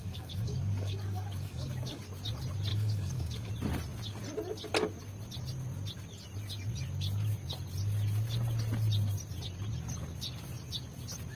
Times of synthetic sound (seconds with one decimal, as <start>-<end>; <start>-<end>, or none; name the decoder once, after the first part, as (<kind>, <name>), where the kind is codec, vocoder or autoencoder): 0.0-2.0 (codec, DAC); 2.7-3.5